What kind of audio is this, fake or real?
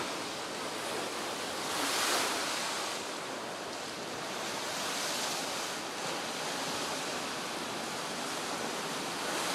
real